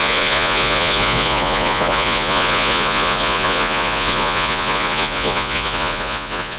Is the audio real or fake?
fake